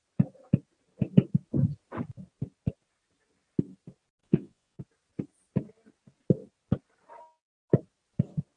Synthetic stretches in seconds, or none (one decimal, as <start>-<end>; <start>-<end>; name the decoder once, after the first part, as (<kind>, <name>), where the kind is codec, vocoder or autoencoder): 4.2-4.8 (vocoder, Vocos)